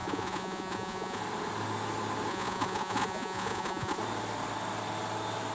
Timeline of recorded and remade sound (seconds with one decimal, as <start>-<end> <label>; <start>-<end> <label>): 0.0-1.2 remade; 1.2-2.3 recorded; 2.3-4.0 remade; 4.0-5.5 recorded

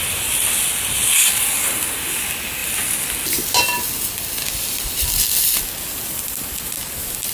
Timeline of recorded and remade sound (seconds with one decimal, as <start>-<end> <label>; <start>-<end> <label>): 0.0-7.3 recorded

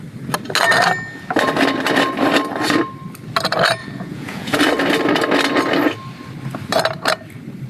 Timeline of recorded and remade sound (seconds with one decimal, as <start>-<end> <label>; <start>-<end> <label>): 0.0-3.8 recorded; 3.8-4.6 remade; 4.6-7.7 recorded

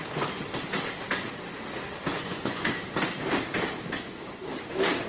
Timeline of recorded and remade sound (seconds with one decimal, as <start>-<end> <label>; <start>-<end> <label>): 0.0-2.1 recorded; 2.1-2.7 remade; 2.7-5.1 recorded

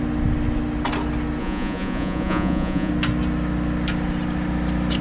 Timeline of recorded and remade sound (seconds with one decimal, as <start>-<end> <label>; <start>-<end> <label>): 0.0-1.4 recorded; 1.4-2.9 remade; 2.9-5.0 recorded

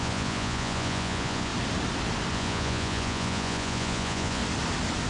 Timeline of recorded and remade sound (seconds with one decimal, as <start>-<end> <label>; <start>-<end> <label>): 0.0-1.5 remade; 1.5-2.3 recorded; 2.3-4.4 remade; 4.4-5.1 recorded